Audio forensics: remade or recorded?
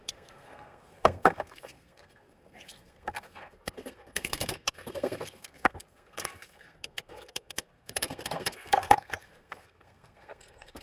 remade